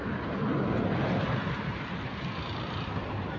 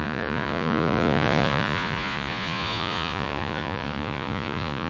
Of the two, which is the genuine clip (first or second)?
first